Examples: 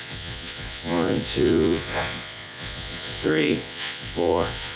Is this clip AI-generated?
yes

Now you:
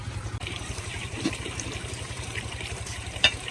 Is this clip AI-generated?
yes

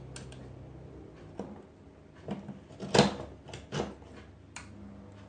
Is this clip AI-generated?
no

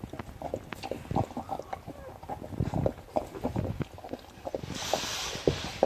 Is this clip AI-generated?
no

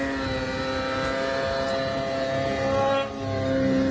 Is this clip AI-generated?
no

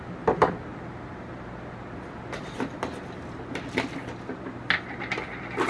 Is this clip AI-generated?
no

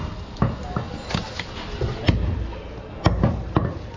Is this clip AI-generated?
no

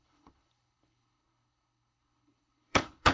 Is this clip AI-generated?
yes